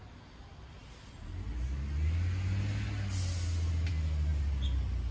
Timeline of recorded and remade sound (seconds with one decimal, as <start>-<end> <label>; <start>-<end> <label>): 0.0-5.1 recorded